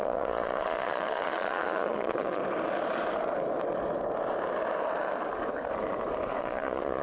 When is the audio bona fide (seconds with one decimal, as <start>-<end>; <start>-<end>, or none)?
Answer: 2.4-6.4